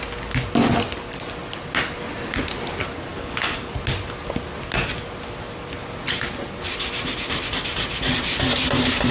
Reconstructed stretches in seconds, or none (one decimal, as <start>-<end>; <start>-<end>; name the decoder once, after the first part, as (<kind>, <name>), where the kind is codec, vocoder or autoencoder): 3.1-3.7 (codec, DAC)